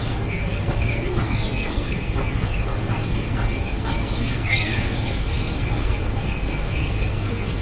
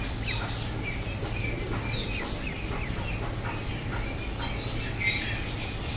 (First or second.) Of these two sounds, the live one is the second